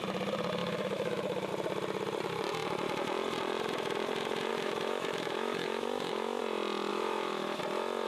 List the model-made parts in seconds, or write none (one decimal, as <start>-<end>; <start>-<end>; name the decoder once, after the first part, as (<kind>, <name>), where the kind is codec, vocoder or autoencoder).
0.6-1.5 (autoencoder, DAC-VAE); 4.5-6.4; 6.9-7.6